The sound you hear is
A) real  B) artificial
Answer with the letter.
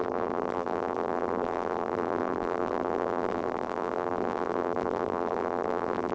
B